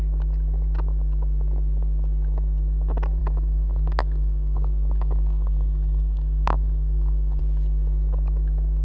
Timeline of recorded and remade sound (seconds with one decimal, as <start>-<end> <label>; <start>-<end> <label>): 0.0-3.2 recorded; 3.2-7.4 remade; 7.4-8.8 recorded